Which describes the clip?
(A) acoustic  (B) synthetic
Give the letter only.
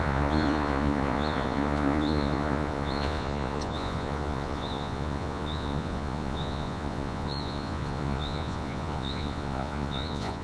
B